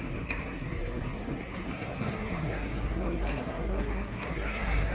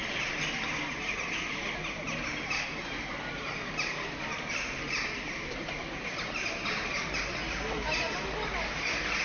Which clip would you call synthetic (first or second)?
first